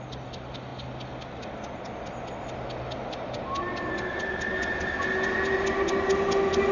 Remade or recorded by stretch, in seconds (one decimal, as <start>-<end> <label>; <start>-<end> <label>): 0.0-6.7 recorded